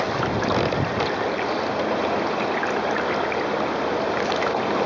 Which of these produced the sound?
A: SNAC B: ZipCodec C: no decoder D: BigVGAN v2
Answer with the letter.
C